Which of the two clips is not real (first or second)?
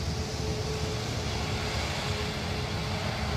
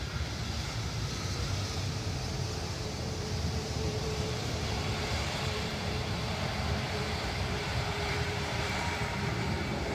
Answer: second